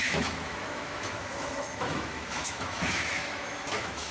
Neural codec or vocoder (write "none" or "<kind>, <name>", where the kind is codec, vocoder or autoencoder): autoencoder, DAC-VAE